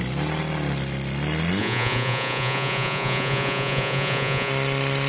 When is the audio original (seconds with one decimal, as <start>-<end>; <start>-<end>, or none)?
0.0-1.6; 4.5-5.1